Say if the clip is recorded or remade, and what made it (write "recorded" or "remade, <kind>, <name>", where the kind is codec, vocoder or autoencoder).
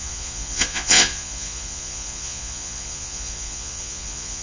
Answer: remade, vocoder, Vocos